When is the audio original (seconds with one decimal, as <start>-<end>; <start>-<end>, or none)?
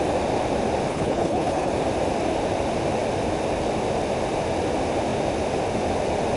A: 0.0-0.9; 1.7-6.4